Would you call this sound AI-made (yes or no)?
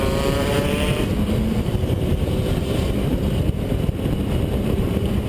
yes